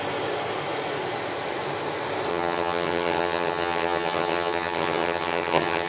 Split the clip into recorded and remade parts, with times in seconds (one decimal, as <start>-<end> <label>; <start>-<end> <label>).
0.0-2.3 recorded; 2.3-5.9 remade